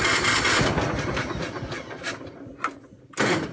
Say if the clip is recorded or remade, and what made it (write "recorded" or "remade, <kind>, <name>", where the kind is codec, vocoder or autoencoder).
recorded